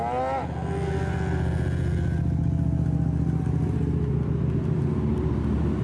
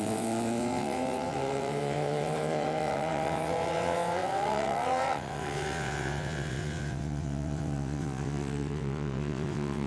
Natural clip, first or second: first